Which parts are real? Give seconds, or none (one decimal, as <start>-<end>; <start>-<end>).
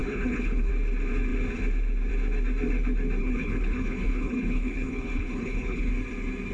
0.7-3.2; 5.9-6.5